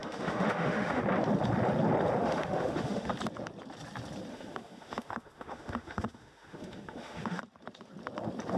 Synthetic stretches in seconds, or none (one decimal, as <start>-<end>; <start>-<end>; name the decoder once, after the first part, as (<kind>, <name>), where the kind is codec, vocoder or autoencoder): 0.0-1.0 (autoencoder, DAC-VAE); 2.2-3.1; 4.3-7.4